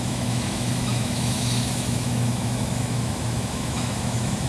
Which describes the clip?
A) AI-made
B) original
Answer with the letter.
A